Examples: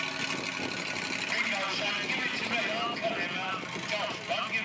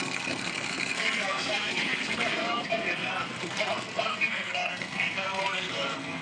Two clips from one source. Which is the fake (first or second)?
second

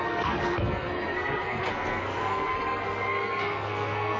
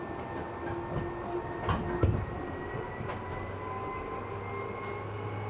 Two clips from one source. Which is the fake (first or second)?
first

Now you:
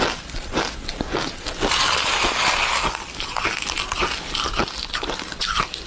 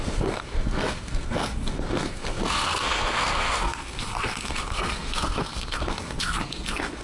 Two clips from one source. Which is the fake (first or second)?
second